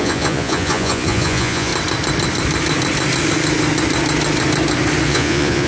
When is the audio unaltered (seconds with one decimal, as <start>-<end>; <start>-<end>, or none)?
1.7-5.1